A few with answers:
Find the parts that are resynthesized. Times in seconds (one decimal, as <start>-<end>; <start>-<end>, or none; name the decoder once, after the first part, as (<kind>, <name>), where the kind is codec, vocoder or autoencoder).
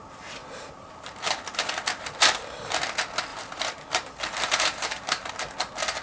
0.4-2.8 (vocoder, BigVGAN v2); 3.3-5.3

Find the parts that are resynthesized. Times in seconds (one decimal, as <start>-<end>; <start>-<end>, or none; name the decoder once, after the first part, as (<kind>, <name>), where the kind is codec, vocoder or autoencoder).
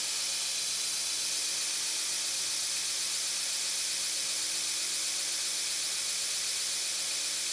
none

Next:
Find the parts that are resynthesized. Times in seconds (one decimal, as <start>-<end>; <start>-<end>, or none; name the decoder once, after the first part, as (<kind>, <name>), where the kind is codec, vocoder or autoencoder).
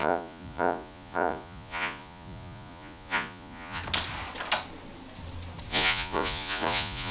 0.0-3.8 (vocoder, Vocos); 5.7-7.1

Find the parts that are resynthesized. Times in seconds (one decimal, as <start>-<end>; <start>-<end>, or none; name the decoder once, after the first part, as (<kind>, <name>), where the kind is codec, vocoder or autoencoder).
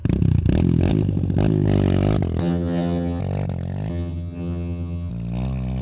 2.4-3.2 (vocoder, HiFi-GAN); 3.9-5.1